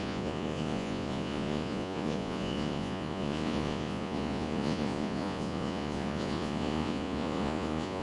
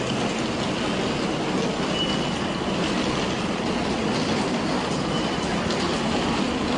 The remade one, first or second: first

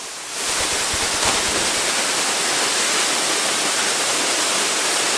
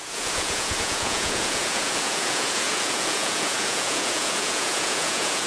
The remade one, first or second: second